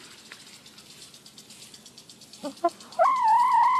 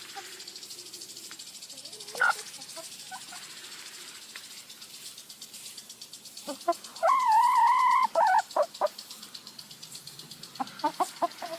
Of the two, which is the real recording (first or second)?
first